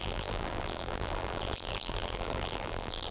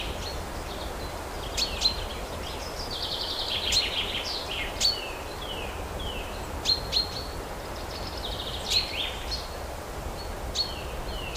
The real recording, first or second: second